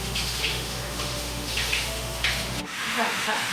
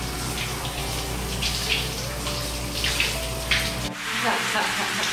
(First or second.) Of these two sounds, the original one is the second